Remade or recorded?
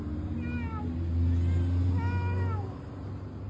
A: recorded